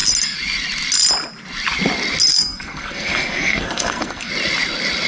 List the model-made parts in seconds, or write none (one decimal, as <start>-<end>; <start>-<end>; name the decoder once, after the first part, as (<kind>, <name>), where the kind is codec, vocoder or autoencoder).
2.3-4.3 (codec, SNAC)